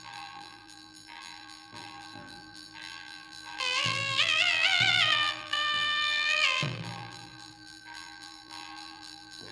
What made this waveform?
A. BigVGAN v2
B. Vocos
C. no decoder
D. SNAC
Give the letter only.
A